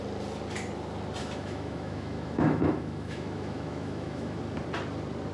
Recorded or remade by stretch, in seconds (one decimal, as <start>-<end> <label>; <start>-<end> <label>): 0.0-1.2 recorded; 1.2-4.4 remade; 4.4-5.3 recorded